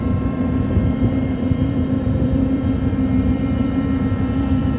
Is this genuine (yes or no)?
no